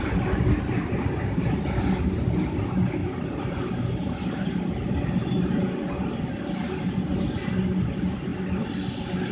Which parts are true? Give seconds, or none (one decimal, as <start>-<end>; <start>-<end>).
0.0-3.0; 5.5-9.3